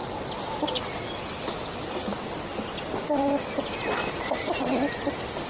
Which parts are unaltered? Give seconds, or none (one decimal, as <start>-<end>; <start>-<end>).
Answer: 0.0-1.6